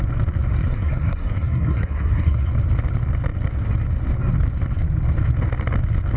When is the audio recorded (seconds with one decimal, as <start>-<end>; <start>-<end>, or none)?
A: 0.0-0.6; 2.5-6.2